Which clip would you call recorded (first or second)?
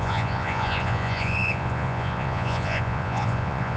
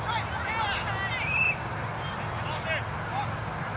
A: second